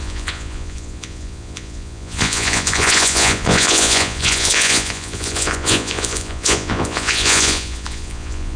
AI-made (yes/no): yes